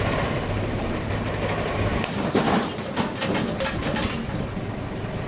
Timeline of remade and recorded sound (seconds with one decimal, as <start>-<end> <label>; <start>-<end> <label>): 0.0-1.9 remade; 1.9-5.3 recorded